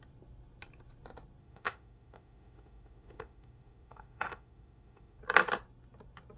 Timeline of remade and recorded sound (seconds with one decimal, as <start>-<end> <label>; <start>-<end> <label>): 0.0-1.4 recorded; 1.4-5.2 remade; 5.2-6.4 recorded